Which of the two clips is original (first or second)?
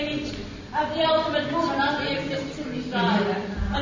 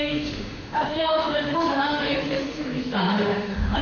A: first